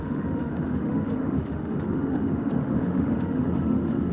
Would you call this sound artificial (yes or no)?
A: yes